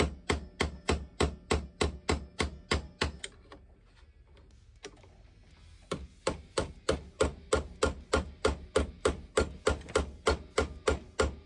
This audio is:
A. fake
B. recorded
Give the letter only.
B